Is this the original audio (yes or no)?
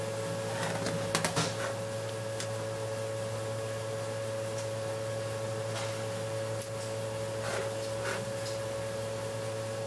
yes